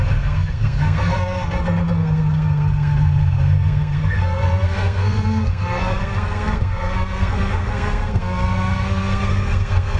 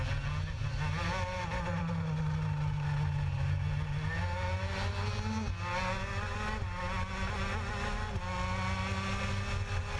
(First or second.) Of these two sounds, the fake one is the first